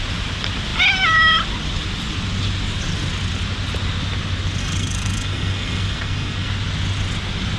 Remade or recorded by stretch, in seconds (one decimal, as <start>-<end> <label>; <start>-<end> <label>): 0.0-4.6 recorded; 4.6-6.5 remade; 6.5-7.6 recorded